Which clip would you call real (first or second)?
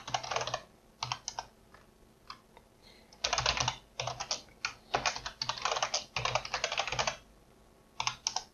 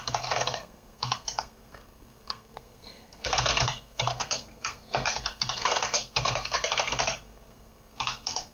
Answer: first